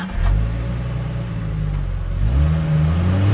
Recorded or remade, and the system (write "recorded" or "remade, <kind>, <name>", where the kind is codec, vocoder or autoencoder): recorded